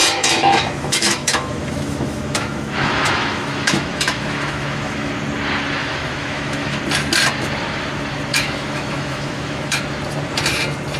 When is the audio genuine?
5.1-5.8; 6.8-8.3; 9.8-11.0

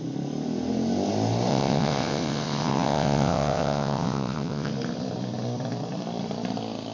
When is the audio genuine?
0.0-1.5; 4.7-6.9

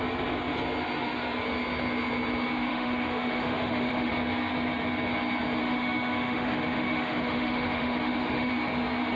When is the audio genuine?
0.0-2.7; 4.1-5.6; 8.5-9.2

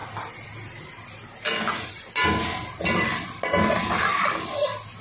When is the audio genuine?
0.0-5.0

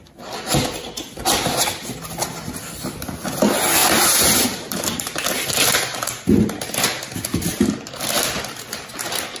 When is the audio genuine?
0.0-3.8; 6.3-9.4

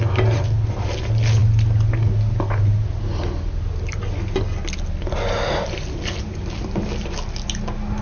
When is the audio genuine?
0.0-8.0

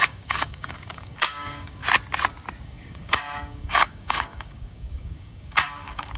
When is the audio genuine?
1.8-2.6

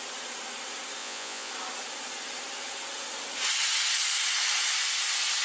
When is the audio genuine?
0.0-1.0; 1.5-5.4